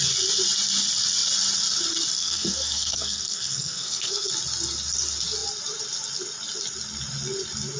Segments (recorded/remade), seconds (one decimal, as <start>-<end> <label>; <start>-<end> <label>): 0.0-2.2 recorded; 2.2-4.3 remade; 4.3-7.8 recorded